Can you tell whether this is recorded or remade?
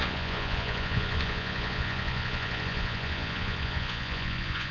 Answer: remade